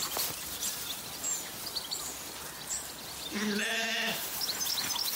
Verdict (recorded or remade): recorded